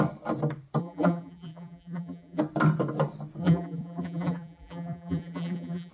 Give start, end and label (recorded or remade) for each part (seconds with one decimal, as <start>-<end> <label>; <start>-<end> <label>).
0.0-0.8 recorded; 0.8-2.4 remade; 2.4-3.4 recorded; 3.4-5.9 remade